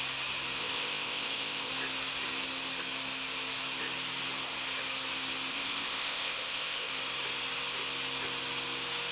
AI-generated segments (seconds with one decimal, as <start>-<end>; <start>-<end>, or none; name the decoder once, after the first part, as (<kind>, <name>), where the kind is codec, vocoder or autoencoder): 0.6-1.7 (codec, ZipCodec); 5.5-6.9